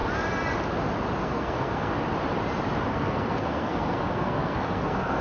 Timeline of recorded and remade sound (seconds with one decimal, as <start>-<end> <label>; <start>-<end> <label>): 0.0-1.2 recorded; 1.2-1.9 remade; 1.9-2.9 recorded; 2.9-5.2 remade